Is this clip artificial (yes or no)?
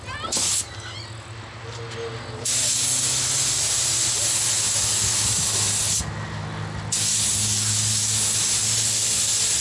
no